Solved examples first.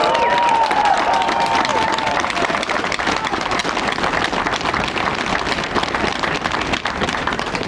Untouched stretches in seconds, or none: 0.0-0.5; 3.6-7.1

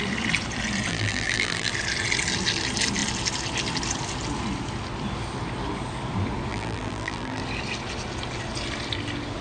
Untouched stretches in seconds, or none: 0.0-0.9; 1.7-6.5; 7.4-9.4

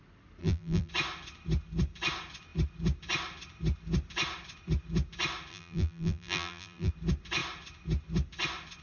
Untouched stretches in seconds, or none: 0.0-0.4; 0.9-5.5; 6.9-8.8

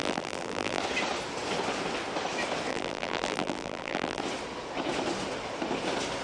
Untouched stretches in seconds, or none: 0.8-2.7; 4.2-6.2